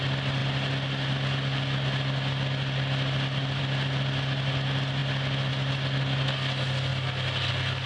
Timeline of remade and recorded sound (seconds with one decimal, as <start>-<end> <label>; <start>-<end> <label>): 0.0-7.9 recorded